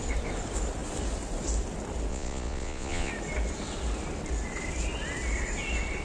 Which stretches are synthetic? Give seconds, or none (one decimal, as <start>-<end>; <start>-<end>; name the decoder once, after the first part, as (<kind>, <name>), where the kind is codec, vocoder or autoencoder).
2.1-3.1 (vocoder, Vocos)